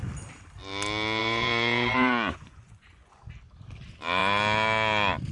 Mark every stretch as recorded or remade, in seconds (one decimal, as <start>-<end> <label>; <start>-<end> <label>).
0.0-1.2 recorded; 1.2-3.2 remade; 3.2-5.3 recorded